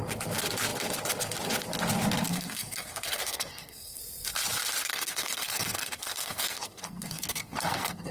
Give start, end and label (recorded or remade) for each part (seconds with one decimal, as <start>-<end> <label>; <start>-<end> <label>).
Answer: 0.0-2.3 recorded; 2.3-4.0 remade; 4.0-4.9 recorded; 4.9-8.1 remade